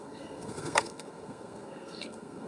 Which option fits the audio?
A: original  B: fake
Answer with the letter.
B